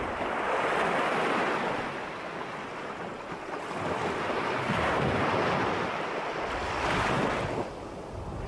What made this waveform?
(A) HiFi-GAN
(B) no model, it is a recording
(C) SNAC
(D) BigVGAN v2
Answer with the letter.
B